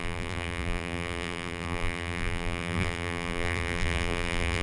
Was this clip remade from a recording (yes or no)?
yes